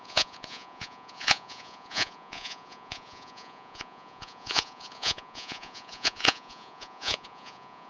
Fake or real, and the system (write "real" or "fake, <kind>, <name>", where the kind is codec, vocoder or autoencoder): fake, vocoder, Vocos